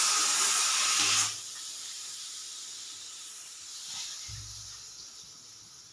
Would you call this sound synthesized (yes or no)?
no